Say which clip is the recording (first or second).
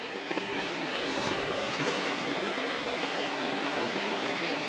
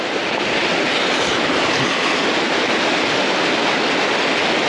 second